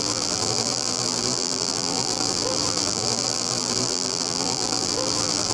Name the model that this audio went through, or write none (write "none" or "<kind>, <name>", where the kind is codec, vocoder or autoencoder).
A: vocoder, BigVGAN v2